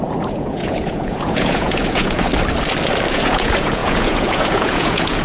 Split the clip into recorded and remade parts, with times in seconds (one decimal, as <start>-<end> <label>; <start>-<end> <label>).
0.0-2.3 remade; 2.3-3.1 recorded; 3.1-5.2 remade

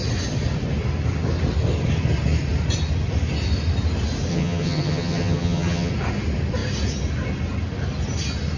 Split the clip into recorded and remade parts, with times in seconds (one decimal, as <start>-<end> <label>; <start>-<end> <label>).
0.0-4.3 recorded; 4.3-5.9 remade; 5.9-8.6 recorded

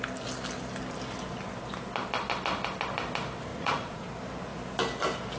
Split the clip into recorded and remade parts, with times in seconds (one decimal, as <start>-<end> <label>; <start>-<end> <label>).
0.0-3.5 recorded; 3.5-4.1 remade; 4.1-5.4 recorded